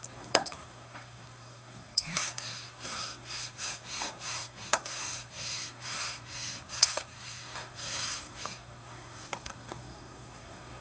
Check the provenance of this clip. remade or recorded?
remade